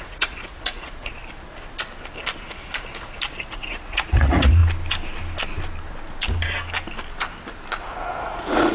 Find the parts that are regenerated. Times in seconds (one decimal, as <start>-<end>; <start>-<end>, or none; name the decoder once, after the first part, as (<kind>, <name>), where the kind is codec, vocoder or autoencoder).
0.0-1.2 (vocoder, Vocos); 3.5-4.6; 7.8-8.7